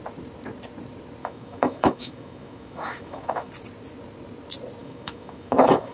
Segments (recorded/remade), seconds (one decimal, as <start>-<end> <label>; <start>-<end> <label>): 0.0-1.2 recorded; 1.2-3.5 remade; 3.5-4.8 recorded; 4.8-5.9 remade